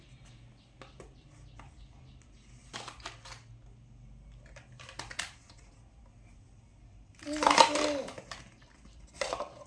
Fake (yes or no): no